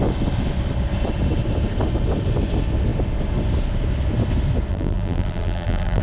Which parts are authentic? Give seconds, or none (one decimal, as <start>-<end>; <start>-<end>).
0.0-4.7